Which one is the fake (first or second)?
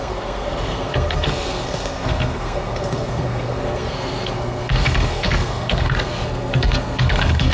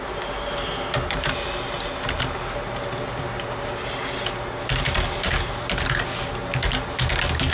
first